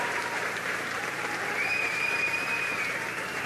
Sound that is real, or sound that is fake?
fake